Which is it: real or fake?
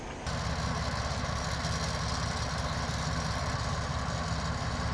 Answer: real